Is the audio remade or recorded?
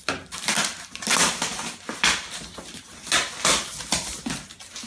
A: recorded